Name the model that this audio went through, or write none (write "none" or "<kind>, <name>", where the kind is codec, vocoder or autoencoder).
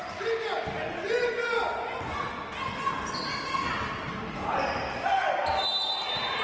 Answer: none